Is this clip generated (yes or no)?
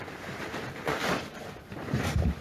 yes